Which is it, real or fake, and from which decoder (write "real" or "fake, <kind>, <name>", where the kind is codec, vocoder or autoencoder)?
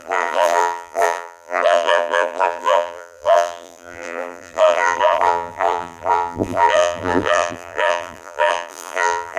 fake, vocoder, BigVGAN v2